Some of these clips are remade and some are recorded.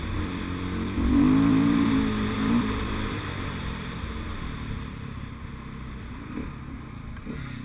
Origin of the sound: remade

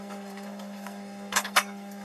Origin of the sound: remade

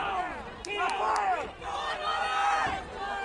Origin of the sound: recorded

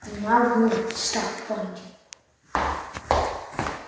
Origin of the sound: recorded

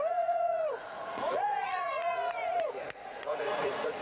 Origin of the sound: remade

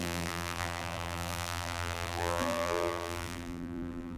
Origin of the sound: remade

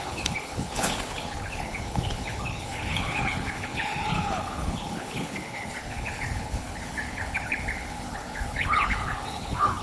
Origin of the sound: remade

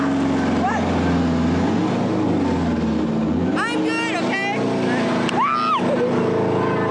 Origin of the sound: recorded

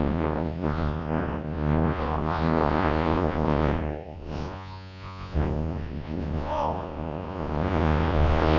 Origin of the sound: remade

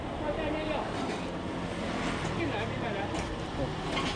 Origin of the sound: recorded